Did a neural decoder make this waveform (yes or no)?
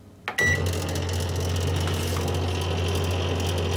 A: no